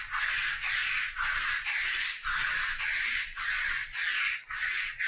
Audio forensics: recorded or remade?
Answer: recorded